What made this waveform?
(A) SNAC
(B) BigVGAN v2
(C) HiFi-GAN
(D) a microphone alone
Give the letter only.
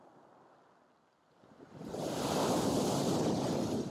D